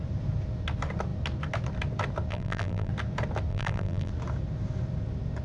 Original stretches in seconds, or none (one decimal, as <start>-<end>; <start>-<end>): 0.0-2.3; 2.9-3.5; 4.1-5.4